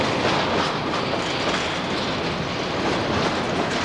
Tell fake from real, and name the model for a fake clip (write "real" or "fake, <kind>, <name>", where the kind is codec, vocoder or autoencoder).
real